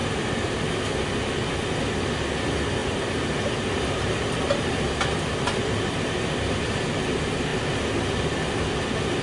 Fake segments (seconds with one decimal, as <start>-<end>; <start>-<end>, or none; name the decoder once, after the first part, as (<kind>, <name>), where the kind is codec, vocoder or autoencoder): 0.0-0.7 (vocoder, BigVGAN v2); 2.8-6.3; 7.5-8.0